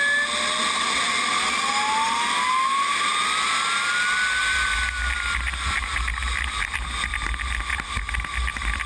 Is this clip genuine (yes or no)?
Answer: yes